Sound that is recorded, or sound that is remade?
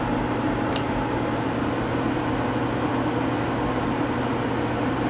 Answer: recorded